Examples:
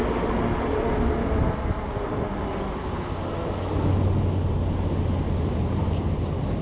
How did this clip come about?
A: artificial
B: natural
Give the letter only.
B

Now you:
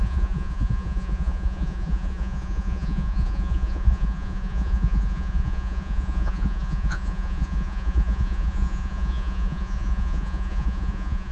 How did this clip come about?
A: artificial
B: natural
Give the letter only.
A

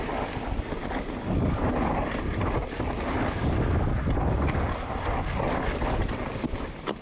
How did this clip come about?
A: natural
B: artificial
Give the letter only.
A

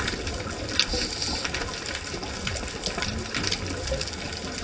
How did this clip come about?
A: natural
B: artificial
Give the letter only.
A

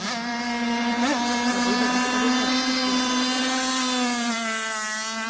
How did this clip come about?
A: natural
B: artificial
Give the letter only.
A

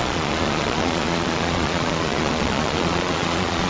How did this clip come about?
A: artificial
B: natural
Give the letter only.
A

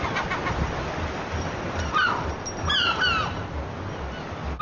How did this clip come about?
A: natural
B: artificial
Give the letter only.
A